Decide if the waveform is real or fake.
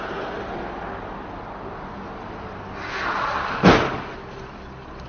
real